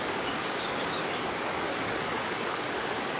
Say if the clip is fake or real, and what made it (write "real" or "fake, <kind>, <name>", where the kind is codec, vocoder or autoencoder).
fake, codec, DAC